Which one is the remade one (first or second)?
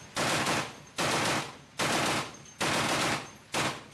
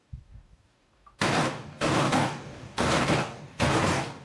second